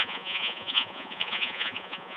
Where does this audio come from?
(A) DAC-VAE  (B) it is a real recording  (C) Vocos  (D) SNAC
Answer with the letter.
C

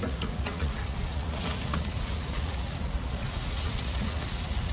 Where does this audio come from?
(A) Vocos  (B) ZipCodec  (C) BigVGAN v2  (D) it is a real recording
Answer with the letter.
A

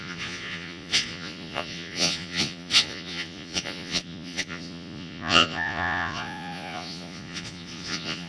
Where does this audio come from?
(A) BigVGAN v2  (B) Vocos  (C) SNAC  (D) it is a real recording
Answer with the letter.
B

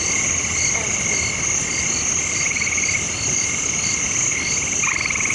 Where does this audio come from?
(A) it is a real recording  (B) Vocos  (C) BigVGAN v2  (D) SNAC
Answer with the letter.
A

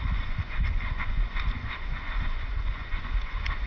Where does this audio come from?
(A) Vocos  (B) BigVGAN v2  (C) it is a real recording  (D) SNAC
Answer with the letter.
A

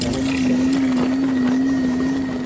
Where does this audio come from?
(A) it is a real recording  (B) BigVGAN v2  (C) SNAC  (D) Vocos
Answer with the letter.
A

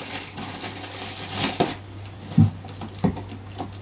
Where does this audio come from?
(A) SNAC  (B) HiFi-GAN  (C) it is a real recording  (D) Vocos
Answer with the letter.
C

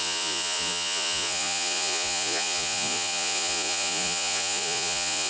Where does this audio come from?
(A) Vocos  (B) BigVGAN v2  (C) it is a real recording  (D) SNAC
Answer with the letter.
A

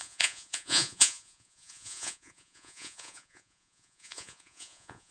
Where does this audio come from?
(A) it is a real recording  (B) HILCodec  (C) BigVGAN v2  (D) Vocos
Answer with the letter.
D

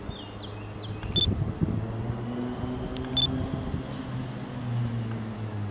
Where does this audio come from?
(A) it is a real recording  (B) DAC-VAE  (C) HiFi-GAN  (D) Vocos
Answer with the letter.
A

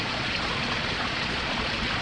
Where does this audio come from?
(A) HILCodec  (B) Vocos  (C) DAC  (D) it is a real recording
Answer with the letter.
B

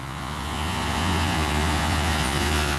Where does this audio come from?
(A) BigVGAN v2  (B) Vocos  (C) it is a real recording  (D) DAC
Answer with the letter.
B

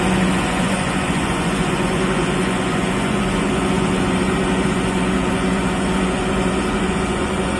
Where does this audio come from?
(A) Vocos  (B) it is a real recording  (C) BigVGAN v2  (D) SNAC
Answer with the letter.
A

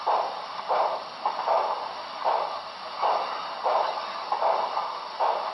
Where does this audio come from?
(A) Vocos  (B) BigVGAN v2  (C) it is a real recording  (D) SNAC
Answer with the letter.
C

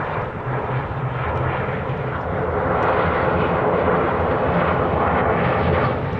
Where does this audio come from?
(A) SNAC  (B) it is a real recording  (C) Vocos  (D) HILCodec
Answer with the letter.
B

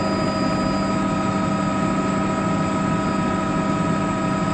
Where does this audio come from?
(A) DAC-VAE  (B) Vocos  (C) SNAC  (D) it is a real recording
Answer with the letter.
D